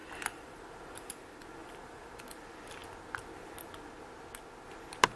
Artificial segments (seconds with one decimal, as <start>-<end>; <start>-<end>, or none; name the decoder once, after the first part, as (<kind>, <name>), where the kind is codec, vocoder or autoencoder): 0.0-1.1 (vocoder, BigVGAN v2); 1.6-2.2